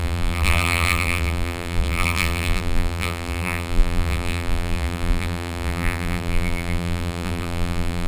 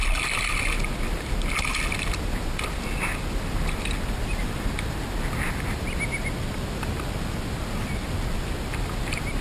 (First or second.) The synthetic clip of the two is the first